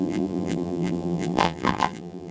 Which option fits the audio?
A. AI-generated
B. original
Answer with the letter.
A